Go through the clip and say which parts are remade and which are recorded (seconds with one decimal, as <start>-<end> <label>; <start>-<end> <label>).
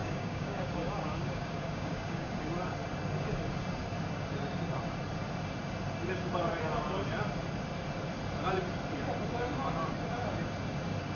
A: 0.0-2.3 remade; 2.3-11.2 recorded